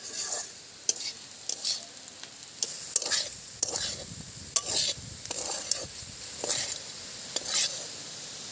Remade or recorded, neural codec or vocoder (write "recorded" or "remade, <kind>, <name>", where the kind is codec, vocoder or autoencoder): recorded